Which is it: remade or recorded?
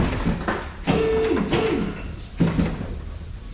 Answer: recorded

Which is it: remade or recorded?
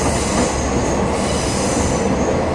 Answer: recorded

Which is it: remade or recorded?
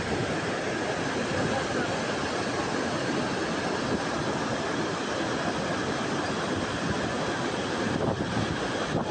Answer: recorded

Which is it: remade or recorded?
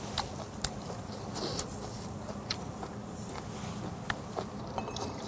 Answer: recorded